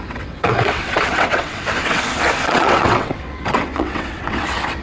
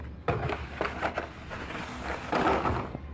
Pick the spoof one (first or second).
first